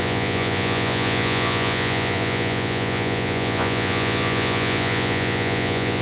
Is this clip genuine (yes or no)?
no